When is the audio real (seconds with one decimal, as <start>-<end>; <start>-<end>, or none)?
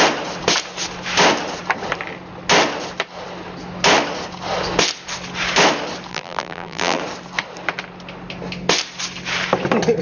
0.0-6.1; 7.0-10.0